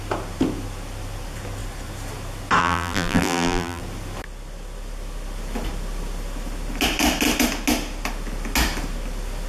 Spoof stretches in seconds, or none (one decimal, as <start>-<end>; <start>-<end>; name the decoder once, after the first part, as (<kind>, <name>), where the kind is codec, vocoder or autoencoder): 2.6-3.8 (vocoder, BigVGAN v2)